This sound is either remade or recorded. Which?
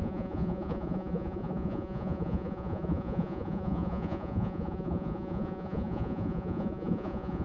remade